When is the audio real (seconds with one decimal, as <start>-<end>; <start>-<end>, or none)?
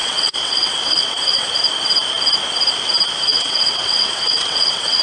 1.6-3.3